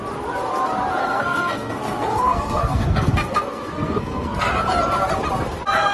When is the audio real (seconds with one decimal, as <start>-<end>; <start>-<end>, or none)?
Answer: 0.0-1.0; 4.5-5.9